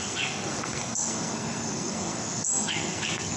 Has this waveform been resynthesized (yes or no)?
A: yes